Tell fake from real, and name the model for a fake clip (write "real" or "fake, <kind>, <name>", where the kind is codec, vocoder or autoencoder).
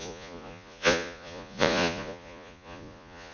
fake, vocoder, Vocos